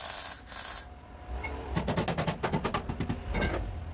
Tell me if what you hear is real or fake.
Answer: real